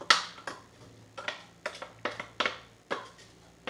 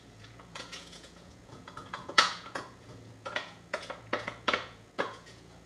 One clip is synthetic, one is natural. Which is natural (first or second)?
first